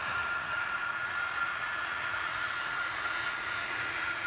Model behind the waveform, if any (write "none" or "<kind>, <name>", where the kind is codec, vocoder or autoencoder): vocoder, Vocos